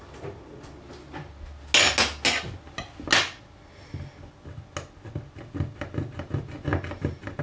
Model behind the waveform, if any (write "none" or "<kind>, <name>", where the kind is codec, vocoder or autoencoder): none